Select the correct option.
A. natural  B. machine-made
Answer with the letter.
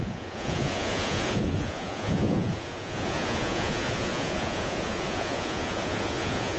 B